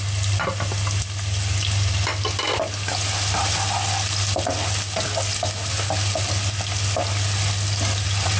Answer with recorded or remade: recorded